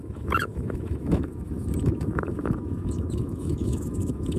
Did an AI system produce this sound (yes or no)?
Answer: yes